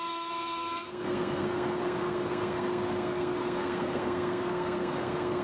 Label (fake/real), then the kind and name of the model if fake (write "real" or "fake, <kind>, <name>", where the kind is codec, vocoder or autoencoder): fake, codec, SNAC